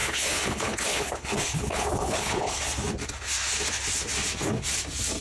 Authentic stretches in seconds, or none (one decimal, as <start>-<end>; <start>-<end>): 2.6-5.2